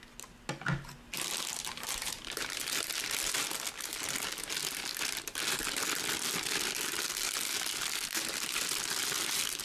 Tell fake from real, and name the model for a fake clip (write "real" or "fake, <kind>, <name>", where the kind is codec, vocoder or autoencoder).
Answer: real